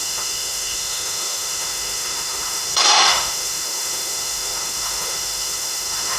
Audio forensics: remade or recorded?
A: remade